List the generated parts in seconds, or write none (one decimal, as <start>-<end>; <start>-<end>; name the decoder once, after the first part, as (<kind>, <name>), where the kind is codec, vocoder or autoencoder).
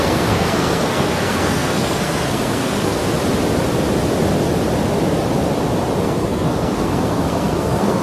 0.0-3.0 (codec, SNAC); 6.0-8.0